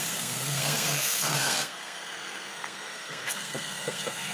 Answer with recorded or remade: remade